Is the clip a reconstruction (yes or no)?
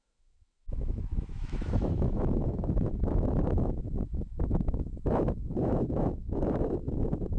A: yes